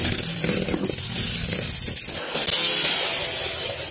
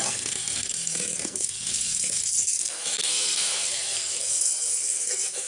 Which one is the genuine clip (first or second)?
first